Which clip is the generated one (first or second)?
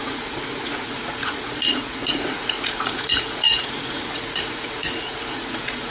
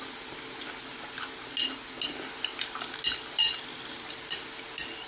first